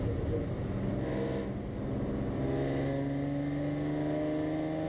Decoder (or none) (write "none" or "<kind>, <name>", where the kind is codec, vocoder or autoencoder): none